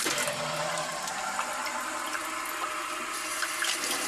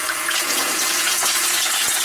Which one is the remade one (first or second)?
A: second